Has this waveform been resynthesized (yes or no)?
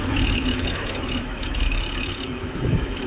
yes